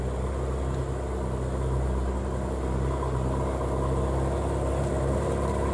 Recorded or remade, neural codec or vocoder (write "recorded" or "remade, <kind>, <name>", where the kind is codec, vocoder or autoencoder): recorded